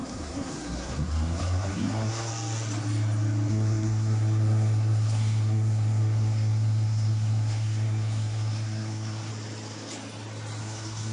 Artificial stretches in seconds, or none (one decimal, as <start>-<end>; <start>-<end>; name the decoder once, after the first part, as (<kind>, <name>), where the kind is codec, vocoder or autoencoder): 0.0-2.3 (codec, SNAC); 3.5-9.3; 10.6-11.1